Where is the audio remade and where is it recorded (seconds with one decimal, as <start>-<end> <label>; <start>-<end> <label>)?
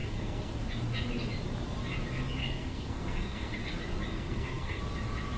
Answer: 0.0-0.5 remade; 0.5-2.4 recorded; 2.4-3.6 remade; 3.6-4.1 recorded; 4.1-4.8 remade; 4.8-5.4 recorded